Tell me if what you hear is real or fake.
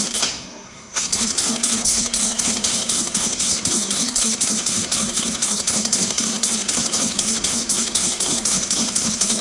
fake